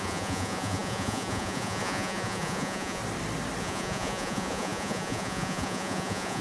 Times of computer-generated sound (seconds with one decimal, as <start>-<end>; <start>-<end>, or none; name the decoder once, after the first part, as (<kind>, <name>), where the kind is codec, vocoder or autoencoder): 0.0-3.0 (vocoder, Vocos); 3.6-6.4